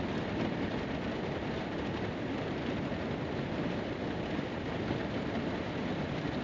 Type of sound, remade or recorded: recorded